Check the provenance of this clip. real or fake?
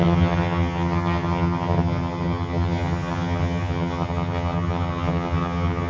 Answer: fake